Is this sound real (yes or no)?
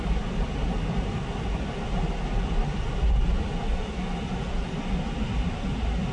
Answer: yes